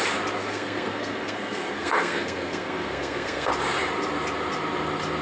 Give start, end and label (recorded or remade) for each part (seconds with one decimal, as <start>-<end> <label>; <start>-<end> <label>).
0.0-0.4 recorded; 0.4-3.5 remade; 3.5-5.2 recorded